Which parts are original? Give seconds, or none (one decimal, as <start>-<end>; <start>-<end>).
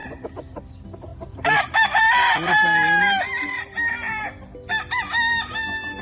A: 0.7-1.1; 4.7-6.0